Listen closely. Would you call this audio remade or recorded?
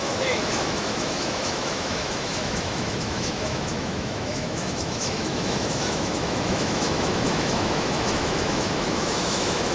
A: remade